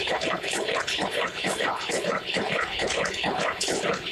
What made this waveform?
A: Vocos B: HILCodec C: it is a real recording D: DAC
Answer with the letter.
B